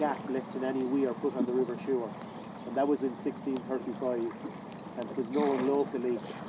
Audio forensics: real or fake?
real